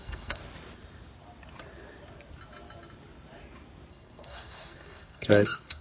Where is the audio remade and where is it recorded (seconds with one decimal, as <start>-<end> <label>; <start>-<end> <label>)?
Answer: 0.0-0.4 remade; 0.4-3.9 recorded; 3.9-5.8 remade